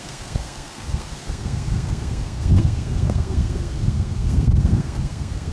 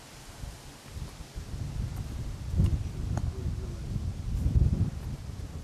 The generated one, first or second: first